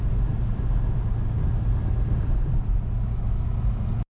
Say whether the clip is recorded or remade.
recorded